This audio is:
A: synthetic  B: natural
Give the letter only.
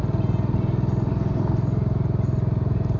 B